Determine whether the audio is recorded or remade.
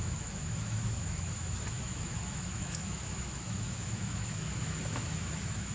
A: remade